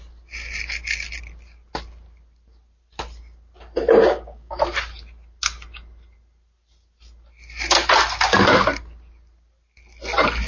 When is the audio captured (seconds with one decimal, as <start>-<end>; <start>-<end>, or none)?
0.0-4.0; 4.6-10.5